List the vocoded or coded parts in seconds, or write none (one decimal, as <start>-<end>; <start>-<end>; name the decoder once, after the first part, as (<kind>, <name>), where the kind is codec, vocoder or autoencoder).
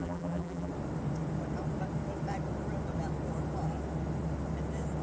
0.0-0.7 (vocoder, BigVGAN v2)